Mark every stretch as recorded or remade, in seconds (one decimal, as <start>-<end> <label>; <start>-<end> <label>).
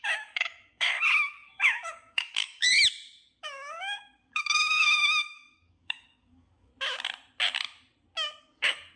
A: 0.0-2.7 remade; 2.7-3.4 recorded; 3.4-6.7 remade; 6.7-8.4 recorded; 8.4-9.0 remade